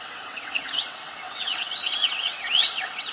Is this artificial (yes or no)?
yes